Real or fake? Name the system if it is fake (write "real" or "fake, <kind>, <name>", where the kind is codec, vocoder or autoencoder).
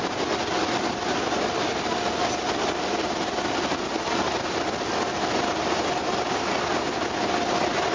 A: real